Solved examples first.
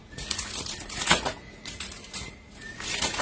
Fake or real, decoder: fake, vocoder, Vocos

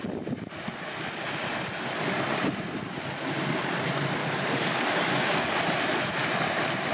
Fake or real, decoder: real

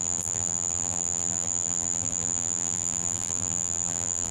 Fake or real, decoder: fake, vocoder, BigVGAN v2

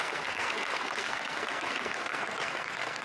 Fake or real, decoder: fake, codec, SNAC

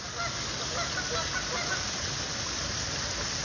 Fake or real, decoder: real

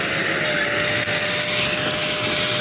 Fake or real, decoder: real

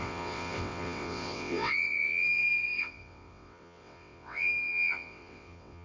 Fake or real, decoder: fake, vocoder, WaveNeXt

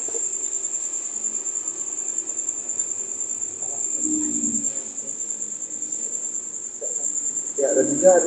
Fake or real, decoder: real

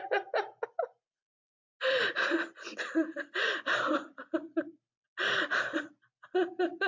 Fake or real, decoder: real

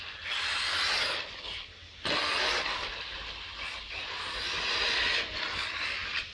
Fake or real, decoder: real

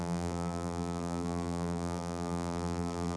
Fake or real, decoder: fake, vocoder, BigVGAN v2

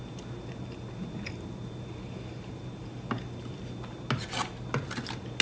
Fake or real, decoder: real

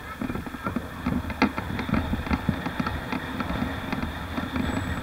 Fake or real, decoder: real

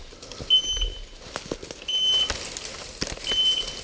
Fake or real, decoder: real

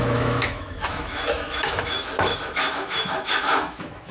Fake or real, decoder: fake, autoencoder, DAC-VAE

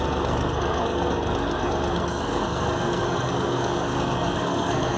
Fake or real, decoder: fake, codec, SNAC